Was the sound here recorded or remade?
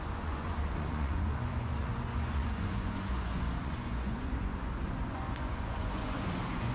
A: remade